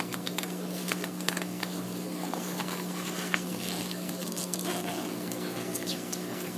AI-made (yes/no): yes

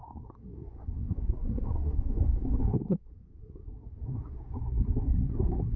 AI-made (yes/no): yes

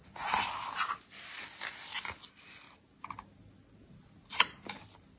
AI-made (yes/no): no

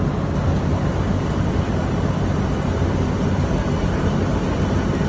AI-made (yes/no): no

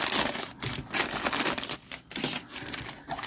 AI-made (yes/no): no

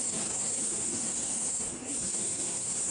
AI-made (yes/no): yes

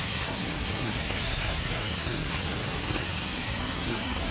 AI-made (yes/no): yes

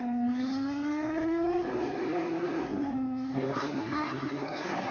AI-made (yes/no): yes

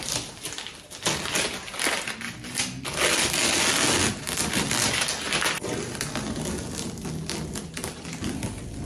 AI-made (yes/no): no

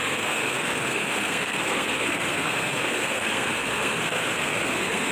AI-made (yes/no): yes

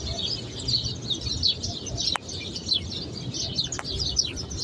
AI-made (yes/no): no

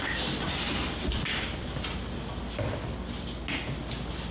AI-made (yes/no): no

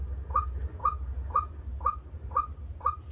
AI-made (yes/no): no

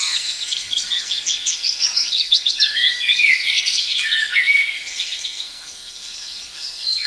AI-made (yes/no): yes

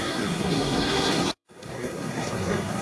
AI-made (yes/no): yes